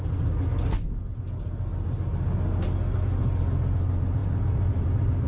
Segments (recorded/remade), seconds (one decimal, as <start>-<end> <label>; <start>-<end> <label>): 0.0-4.2 recorded; 4.2-5.3 remade

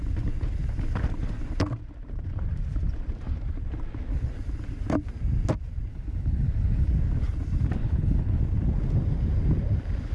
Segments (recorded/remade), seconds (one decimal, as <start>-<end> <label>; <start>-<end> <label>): 0.0-5.9 recorded; 5.9-6.9 remade; 6.9-7.8 recorded; 7.8-8.4 remade; 8.4-10.1 recorded

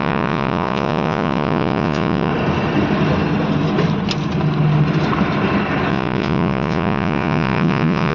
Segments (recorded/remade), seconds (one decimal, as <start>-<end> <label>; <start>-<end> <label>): 0.0-2.3 remade; 2.3-5.9 recorded; 5.9-8.1 remade

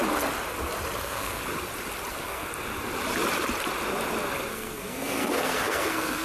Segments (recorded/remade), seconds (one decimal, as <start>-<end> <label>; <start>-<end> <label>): 0.0-1.0 recorded; 1.0-1.4 remade; 1.4-2.1 recorded; 2.1-2.5 remade; 2.5-4.5 recorded; 4.5-6.2 remade

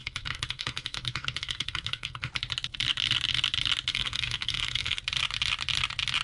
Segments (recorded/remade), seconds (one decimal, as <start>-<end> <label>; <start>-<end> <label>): 0.0-2.3 remade; 2.3-3.9 recorded; 3.9-5.0 remade; 5.0-6.2 recorded

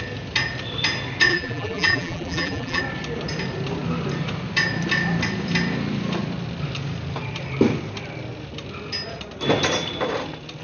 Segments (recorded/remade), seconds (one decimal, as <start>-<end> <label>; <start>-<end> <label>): 0.0-1.3 recorded; 1.3-2.8 remade; 2.8-10.6 recorded

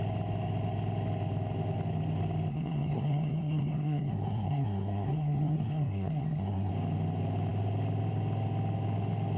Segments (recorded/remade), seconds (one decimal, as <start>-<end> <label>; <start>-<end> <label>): 0.0-2.5 recorded; 2.5-6.7 remade; 6.7-9.4 recorded

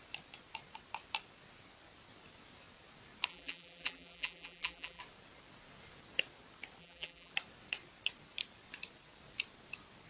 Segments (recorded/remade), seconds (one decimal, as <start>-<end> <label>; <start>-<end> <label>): 0.0-3.3 recorded; 3.3-5.0 remade; 5.0-6.8 recorded; 6.8-7.3 remade; 7.3-10.1 recorded